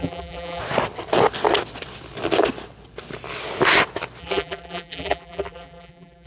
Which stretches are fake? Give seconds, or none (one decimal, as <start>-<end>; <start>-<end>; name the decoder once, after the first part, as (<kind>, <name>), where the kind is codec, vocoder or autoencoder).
0.0-0.6 (vocoder, BigVGAN v2); 4.2-6.3